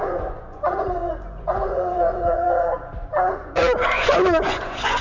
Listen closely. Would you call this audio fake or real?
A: fake